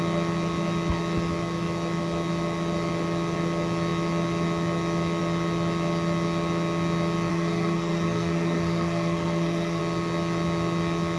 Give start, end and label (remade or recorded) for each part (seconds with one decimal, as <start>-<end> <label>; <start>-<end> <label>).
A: 0.0-7.3 recorded; 7.3-9.8 remade; 9.8-11.2 recorded